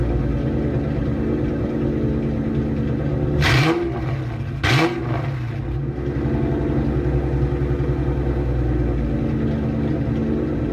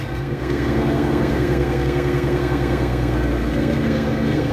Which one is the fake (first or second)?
second